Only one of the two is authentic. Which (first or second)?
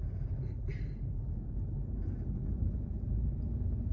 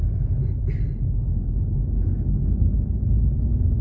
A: second